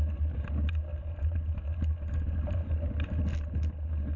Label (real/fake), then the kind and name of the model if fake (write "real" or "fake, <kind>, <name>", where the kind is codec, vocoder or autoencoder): real